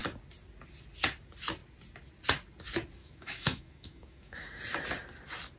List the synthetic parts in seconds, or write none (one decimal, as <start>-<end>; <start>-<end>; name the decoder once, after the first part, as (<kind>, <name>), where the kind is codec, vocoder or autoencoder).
3.0-4.6 (autoencoder, DAC-VAE)